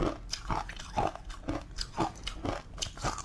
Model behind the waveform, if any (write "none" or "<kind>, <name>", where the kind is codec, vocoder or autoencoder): none